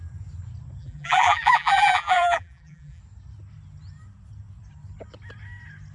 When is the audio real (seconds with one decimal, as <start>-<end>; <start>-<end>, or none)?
0.0-0.8; 3.0-5.9